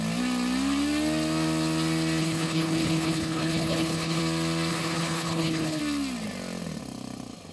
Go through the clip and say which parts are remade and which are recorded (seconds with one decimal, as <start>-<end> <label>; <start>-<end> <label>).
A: 0.0-2.2 recorded; 2.2-4.2 remade; 4.2-4.7 recorded; 4.7-5.8 remade; 5.8-7.5 recorded